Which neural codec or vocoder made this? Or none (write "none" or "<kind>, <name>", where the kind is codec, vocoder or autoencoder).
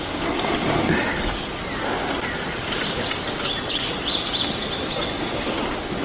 none